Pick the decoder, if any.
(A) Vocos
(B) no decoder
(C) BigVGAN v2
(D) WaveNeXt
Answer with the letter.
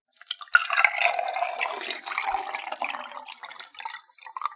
B